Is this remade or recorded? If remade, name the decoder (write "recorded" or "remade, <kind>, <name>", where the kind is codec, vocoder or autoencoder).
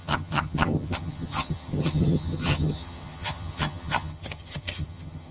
remade, vocoder, HiFi-GAN